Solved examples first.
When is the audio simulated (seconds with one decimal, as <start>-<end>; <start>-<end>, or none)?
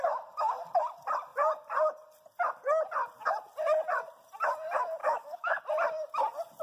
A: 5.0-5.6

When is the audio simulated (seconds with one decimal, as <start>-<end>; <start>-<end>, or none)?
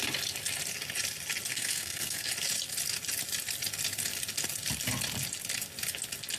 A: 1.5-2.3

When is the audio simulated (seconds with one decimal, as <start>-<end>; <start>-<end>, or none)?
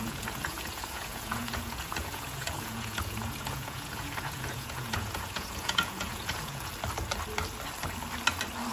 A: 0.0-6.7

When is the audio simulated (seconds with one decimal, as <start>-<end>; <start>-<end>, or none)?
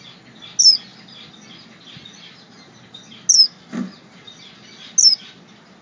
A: none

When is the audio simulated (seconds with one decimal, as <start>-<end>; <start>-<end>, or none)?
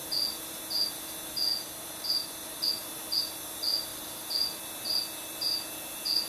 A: 1.5-2.6; 3.9-4.6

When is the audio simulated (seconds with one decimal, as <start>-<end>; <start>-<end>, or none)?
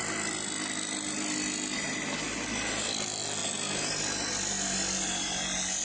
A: none